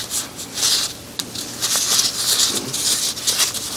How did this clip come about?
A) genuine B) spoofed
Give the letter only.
A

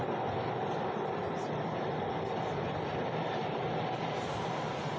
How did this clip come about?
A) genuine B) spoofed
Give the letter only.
A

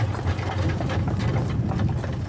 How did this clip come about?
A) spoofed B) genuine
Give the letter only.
B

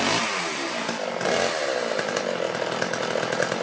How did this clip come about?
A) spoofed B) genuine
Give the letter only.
B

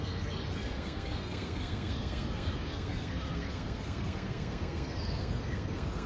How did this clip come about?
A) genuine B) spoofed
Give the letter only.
B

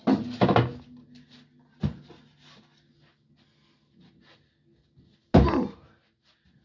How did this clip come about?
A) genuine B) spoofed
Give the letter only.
A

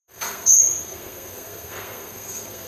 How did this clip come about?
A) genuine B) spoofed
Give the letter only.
B